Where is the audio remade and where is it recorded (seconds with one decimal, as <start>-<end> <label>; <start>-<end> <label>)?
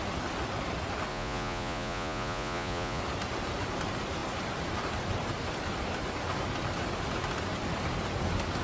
0.0-1.1 recorded; 1.1-3.0 remade; 3.0-8.6 recorded